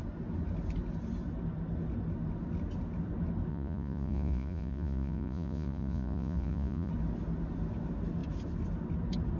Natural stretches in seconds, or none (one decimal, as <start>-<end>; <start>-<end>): 0.0-3.5; 6.9-9.4